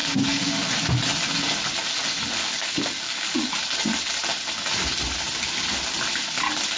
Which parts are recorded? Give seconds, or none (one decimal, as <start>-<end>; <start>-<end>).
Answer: 0.7-2.4; 3.5-6.8